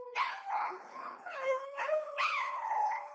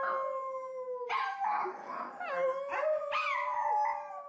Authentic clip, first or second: second